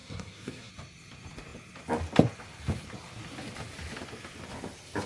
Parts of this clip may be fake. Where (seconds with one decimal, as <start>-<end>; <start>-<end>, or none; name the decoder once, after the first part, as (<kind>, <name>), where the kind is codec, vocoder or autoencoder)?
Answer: 0.0-0.7 (codec, SNAC)